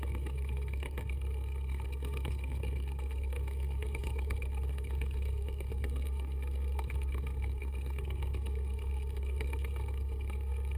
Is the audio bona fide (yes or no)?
no